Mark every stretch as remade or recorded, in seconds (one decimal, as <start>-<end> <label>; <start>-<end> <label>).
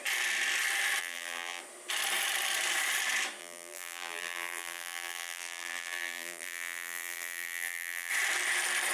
0.0-1.0 recorded; 1.0-1.6 remade; 1.6-3.4 recorded; 3.4-8.1 remade; 8.1-8.9 recorded